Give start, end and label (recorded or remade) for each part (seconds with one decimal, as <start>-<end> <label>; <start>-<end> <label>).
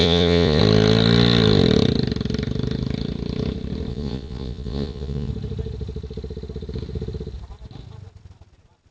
0.0-0.6 remade; 0.6-3.9 recorded; 3.9-5.3 remade; 5.3-8.9 recorded